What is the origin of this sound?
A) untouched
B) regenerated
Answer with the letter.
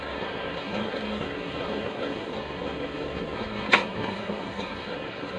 B